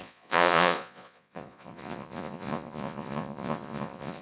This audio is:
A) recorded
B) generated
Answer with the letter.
B